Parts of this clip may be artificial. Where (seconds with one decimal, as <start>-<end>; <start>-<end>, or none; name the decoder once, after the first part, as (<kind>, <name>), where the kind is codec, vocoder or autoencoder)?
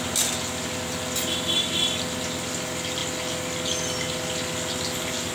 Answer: none